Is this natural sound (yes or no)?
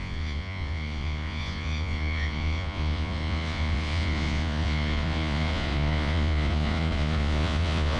no